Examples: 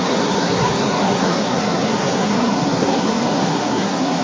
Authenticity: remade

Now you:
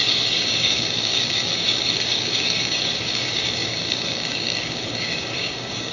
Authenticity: remade